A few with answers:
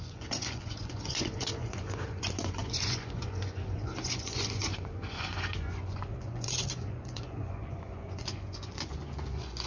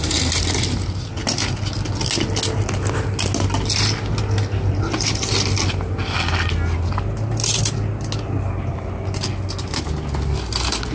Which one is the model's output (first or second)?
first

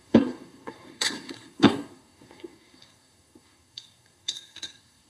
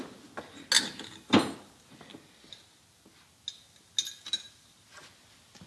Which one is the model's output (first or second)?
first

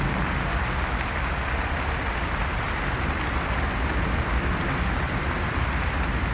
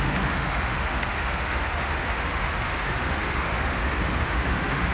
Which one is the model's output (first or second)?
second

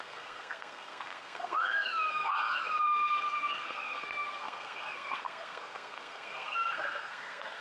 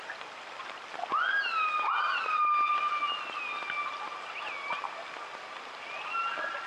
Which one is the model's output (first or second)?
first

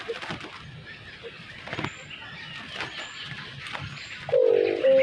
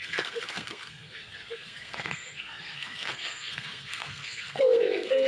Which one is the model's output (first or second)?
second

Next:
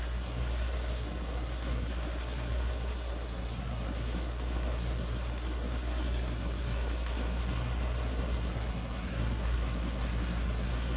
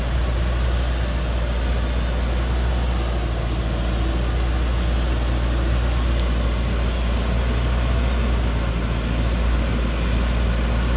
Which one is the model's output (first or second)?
first